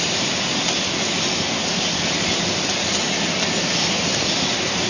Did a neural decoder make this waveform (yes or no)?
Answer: no